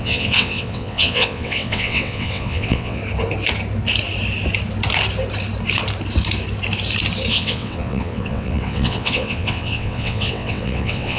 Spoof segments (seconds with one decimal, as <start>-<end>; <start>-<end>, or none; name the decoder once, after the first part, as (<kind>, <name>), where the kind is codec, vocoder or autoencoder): 0.0-3.0 (vocoder, WaveNeXt); 7.3-11.2